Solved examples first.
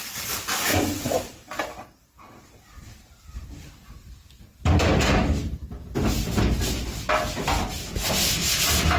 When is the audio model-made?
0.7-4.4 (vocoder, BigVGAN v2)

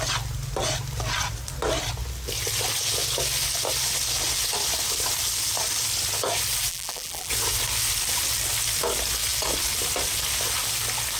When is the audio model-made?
6.7-7.3 (vocoder, BigVGAN v2)

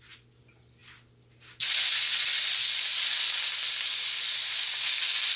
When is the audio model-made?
none